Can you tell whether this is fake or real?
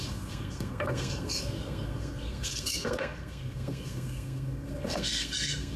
fake